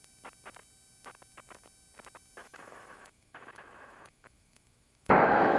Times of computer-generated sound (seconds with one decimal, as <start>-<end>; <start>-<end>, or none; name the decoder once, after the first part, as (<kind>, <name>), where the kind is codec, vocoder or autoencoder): 2.4-5.6 (autoencoder, DAC-VAE)